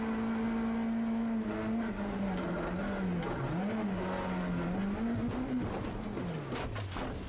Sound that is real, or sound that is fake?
real